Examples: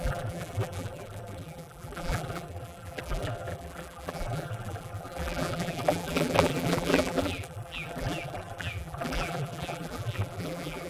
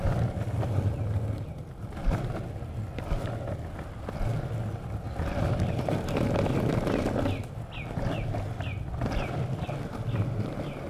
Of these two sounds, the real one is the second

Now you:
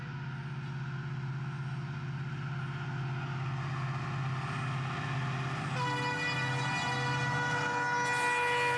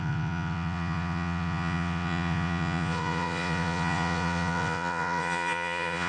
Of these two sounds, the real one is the first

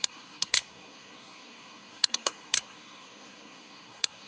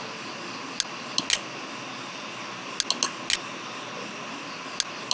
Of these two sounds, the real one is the second